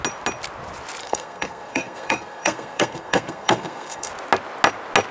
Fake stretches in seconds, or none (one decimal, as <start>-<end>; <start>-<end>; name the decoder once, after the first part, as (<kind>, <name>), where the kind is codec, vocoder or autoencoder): 1.0-4.1 (codec, SNAC)